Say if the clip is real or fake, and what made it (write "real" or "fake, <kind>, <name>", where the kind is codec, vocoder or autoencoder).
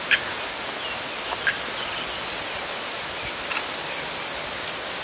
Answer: real